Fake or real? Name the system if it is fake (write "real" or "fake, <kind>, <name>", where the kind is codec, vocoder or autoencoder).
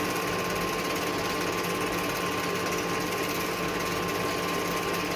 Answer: real